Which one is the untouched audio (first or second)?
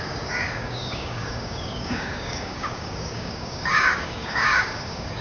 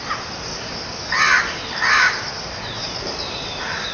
second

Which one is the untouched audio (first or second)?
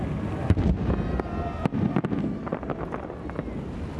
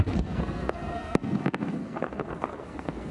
first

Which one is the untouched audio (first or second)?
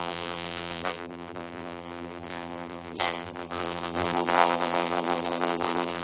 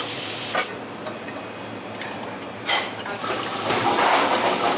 second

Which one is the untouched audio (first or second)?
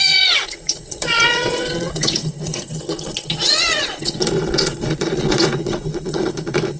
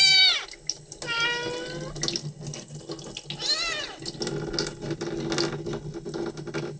second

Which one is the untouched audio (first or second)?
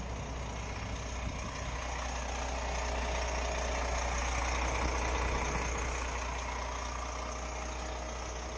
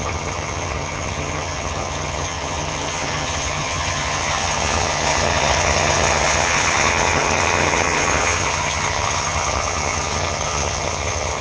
first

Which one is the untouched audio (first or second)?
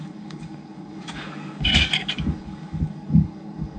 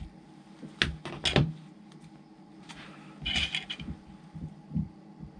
second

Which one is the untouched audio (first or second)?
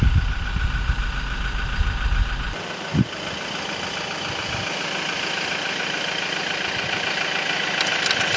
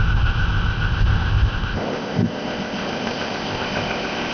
first